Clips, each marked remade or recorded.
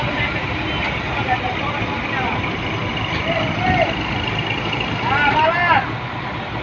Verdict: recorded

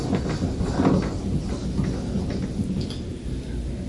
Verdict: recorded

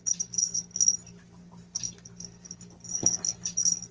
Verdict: recorded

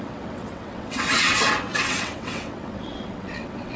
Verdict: remade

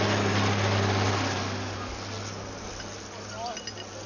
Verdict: recorded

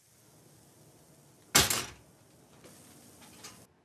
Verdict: recorded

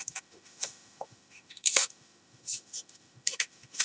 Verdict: remade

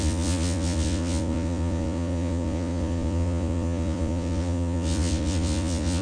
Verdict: remade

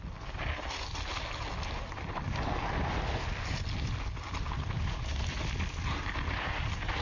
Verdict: recorded